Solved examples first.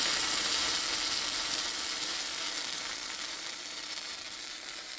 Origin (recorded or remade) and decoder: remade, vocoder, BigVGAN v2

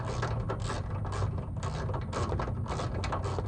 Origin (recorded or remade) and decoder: recorded